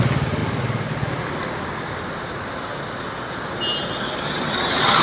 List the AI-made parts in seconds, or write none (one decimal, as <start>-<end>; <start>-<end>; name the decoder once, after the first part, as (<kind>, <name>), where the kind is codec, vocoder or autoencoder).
none